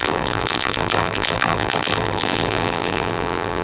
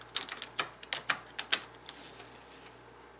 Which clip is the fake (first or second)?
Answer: first